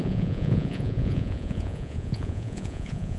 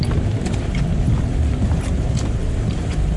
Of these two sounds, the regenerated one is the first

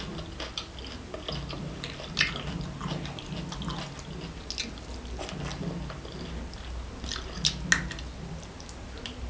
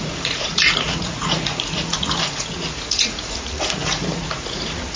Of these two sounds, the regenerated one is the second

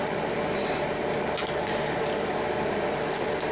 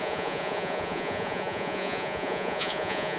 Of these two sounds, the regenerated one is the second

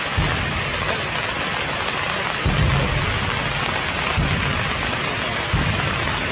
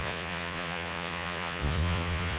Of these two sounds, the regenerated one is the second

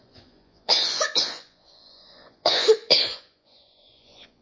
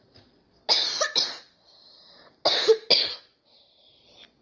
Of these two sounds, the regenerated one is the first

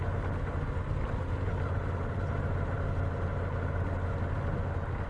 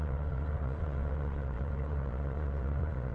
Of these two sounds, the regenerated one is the second